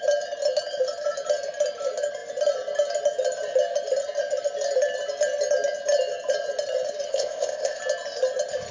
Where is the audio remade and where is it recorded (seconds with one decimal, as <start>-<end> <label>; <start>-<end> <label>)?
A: 0.0-7.1 recorded; 7.1-7.8 remade; 7.8-8.7 recorded